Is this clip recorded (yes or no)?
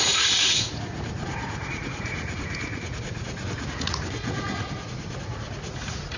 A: no